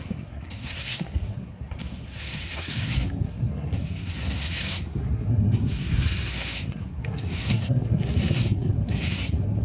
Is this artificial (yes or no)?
yes